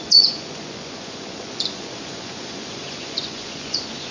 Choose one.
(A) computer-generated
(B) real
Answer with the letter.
A